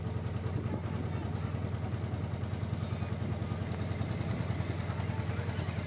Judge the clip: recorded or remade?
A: recorded